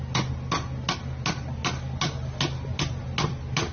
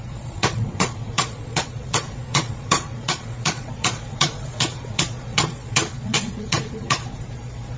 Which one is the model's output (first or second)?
second